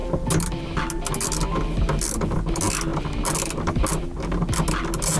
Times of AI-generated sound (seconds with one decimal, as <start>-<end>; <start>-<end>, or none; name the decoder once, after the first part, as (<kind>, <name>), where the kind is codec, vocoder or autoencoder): none